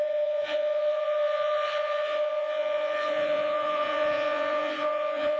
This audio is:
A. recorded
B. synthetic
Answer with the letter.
B